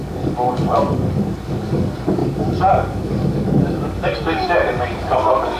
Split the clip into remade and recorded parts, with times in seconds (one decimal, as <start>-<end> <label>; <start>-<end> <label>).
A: 0.0-5.6 remade